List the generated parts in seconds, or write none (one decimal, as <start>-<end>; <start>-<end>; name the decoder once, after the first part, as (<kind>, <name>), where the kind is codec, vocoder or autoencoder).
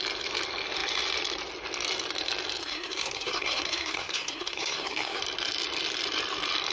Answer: 2.6-5.2 (codec, SNAC)